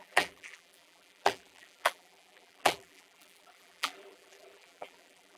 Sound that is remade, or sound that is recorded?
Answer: remade